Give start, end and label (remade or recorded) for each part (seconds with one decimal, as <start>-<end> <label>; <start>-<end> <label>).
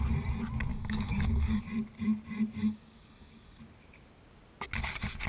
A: 0.0-0.7 recorded; 0.7-1.6 remade; 1.6-2.6 recorded; 2.6-3.6 remade; 3.6-5.3 recorded